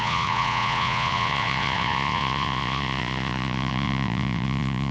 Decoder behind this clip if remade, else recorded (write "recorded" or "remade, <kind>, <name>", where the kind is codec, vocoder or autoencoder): remade, vocoder, Vocos